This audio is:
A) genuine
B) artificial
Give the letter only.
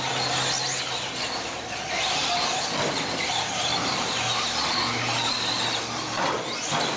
A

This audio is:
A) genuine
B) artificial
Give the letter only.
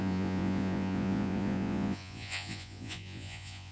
B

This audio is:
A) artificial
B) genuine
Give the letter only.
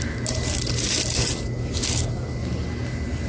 B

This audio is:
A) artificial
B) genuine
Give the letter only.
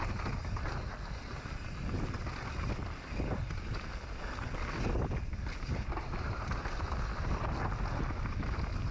B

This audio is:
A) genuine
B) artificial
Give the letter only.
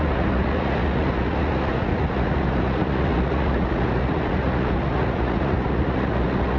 B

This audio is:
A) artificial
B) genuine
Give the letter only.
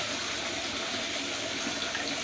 B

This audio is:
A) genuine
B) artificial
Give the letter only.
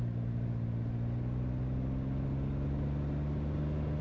A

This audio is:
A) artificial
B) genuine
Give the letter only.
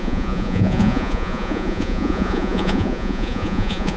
A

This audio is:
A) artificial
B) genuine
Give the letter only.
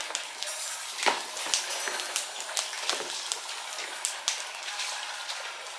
B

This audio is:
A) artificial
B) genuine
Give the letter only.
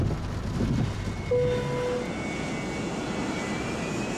B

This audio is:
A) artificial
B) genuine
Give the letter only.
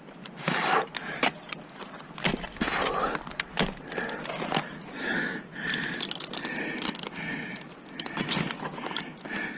B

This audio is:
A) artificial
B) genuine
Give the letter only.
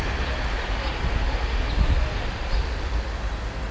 B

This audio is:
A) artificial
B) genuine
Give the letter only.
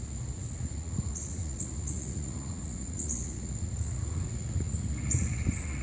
A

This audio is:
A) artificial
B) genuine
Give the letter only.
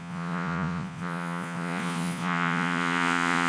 A